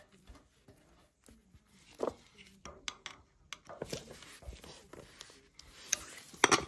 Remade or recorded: recorded